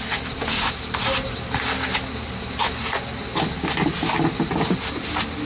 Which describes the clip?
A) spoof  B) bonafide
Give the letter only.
B